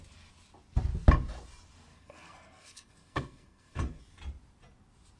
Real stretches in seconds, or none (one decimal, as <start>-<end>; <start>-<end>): 0.0-1.9; 4.0-5.2